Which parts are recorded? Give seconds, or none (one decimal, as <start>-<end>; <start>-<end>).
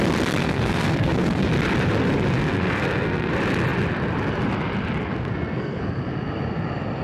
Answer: 0.0-0.4; 1.5-2.4; 3.3-5.0; 5.8-7.0